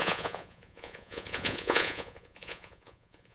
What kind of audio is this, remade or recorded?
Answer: remade